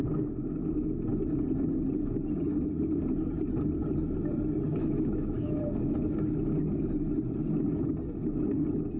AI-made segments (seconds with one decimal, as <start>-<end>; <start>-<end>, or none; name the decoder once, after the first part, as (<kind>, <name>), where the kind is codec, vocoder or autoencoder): 4.7-5.6 (autoencoder, DAC-VAE)